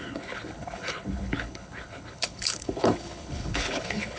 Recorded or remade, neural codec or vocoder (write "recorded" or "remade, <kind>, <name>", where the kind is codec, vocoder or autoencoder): remade, codec, HILCodec